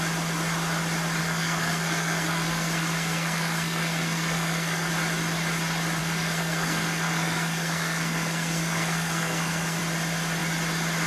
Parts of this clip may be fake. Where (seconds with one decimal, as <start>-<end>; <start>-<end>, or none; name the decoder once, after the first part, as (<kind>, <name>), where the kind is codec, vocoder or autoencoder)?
1.2-4.9 (codec, SNAC); 6.0-9.8